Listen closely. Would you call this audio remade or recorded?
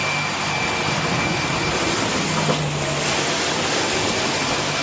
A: recorded